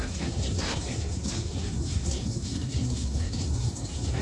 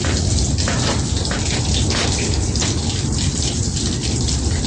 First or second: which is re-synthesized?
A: first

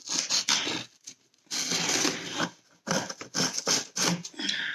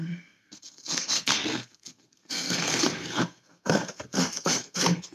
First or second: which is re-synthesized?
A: second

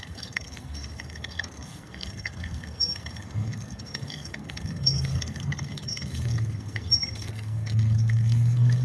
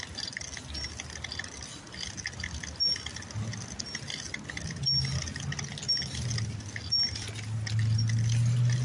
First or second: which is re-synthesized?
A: first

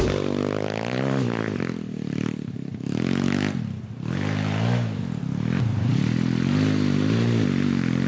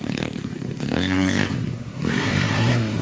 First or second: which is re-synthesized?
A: second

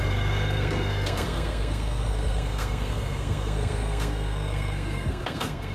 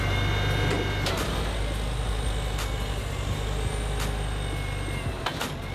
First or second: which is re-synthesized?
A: first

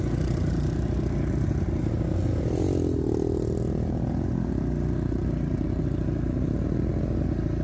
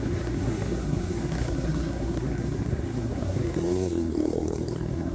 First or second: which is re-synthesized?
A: second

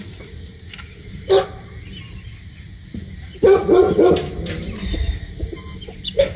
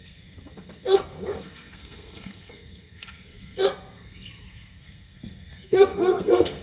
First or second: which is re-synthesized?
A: second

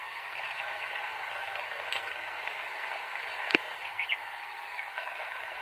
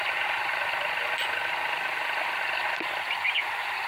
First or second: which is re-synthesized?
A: first